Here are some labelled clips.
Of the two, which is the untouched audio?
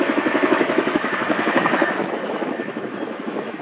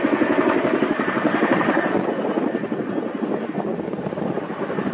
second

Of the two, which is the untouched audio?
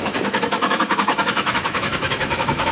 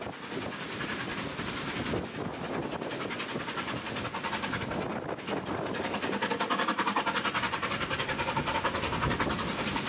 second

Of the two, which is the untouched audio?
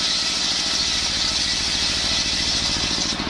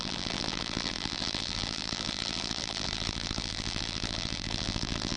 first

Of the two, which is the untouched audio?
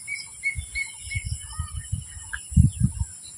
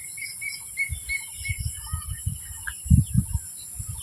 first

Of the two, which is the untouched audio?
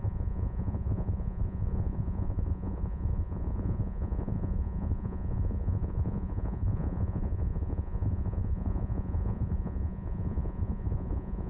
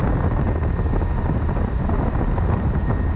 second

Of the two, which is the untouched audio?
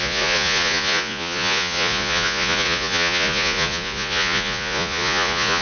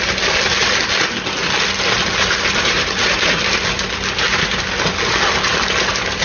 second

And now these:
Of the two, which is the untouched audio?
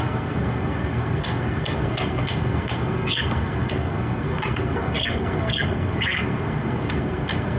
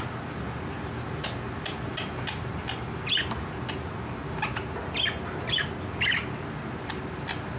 second